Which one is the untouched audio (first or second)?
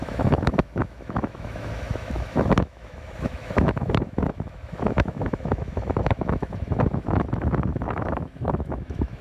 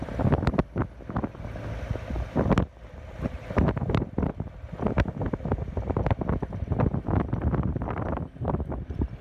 second